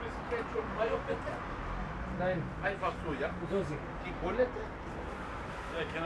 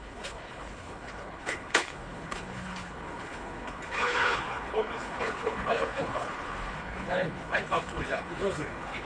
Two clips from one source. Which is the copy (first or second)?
second